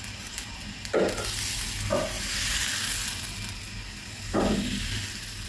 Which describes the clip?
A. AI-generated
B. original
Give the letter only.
B